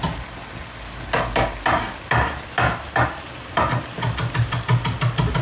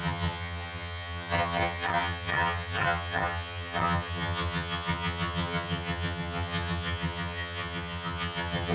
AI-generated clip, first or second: second